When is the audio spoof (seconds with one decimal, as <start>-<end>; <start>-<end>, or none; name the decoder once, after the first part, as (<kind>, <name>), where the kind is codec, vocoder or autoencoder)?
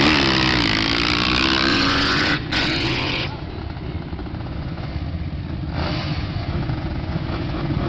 1.7-3.5 (vocoder, Vocos); 4.2-4.9; 6.0-7.9